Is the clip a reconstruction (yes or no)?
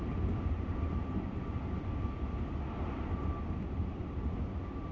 no